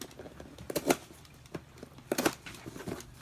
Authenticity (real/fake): real